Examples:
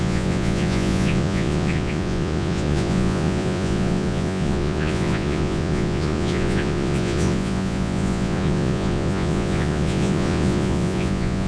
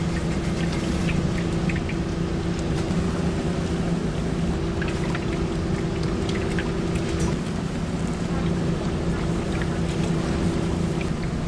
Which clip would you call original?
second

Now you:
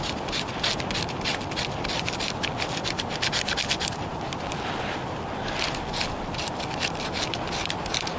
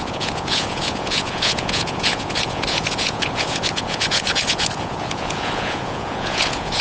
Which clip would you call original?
first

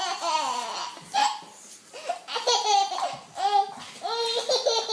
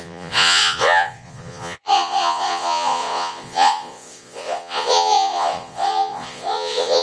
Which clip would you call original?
first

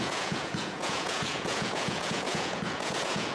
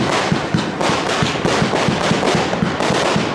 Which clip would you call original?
second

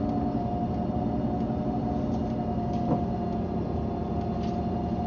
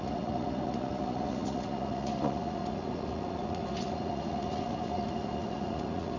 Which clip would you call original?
first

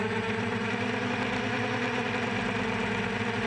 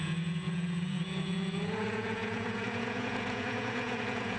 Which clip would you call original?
first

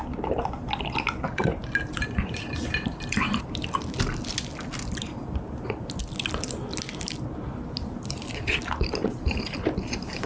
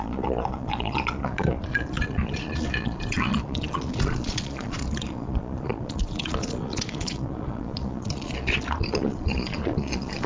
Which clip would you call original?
first